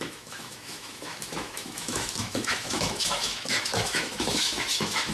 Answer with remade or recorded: remade